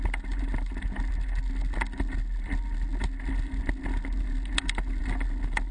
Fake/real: real